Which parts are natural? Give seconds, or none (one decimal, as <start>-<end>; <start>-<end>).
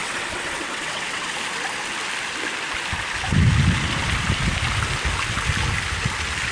1.3-6.5